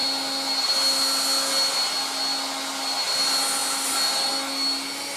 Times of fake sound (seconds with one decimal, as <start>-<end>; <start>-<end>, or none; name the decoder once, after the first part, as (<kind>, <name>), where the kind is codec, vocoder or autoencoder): none